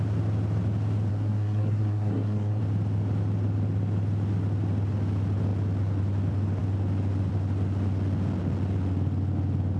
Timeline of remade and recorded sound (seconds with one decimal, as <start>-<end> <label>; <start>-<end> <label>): 0.0-1.1 recorded; 1.1-2.6 remade; 2.6-9.8 recorded

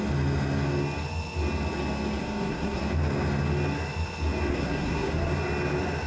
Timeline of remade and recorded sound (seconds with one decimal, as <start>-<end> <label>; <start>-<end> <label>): 0.0-2.2 recorded; 2.2-2.8 remade; 2.8-4.5 recorded; 4.5-5.3 remade; 5.3-6.1 recorded

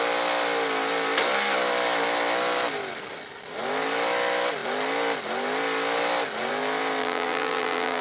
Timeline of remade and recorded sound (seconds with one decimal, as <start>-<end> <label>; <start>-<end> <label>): 0.0-7.0 recorded; 7.0-8.0 remade